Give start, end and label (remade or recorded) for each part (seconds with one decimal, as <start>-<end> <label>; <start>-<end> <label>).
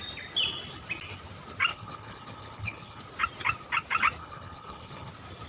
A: 0.0-1.7 recorded; 1.7-3.0 remade; 3.0-4.2 recorded; 4.2-5.1 remade; 5.1-5.5 recorded